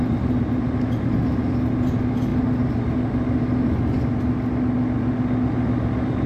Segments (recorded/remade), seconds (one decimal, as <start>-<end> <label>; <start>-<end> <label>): 0.0-6.3 recorded